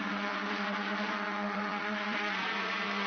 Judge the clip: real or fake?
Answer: fake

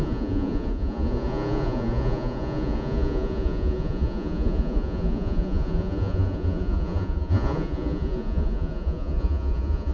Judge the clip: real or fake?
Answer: fake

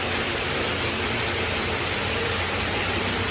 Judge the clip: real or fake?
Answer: real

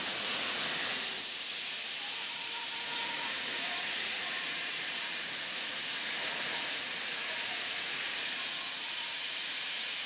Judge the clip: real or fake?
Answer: fake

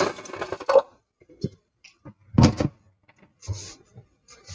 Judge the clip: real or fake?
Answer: real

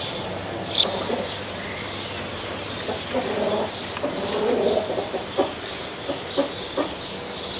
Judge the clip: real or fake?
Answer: real